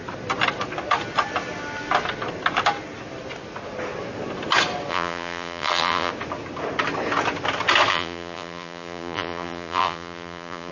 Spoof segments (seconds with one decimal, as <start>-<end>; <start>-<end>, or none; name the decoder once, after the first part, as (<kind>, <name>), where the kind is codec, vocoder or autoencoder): 4.9-6.1 (vocoder, BigVGAN v2); 7.9-10.7